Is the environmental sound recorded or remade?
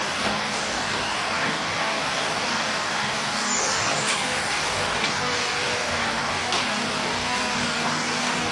remade